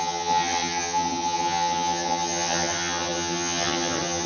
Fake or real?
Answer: fake